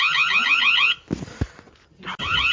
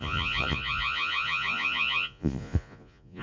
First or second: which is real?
first